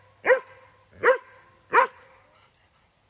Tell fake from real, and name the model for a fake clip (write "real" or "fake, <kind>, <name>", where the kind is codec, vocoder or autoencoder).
real